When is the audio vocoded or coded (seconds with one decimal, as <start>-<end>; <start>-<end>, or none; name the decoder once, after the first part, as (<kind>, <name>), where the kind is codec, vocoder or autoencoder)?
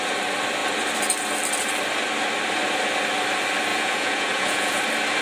3.7-4.8 (vocoder, Vocos)